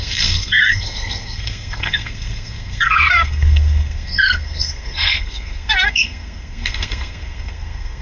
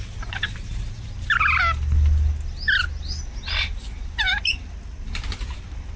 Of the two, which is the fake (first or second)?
first